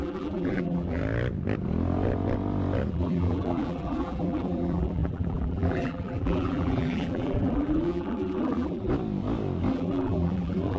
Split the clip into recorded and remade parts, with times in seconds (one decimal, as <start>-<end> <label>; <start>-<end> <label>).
0.0-1.0 remade; 1.0-2.9 recorded; 2.9-8.9 remade; 8.9-9.7 recorded; 9.7-10.8 remade